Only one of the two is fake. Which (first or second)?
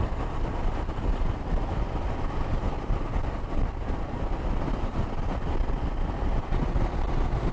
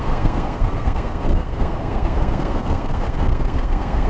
second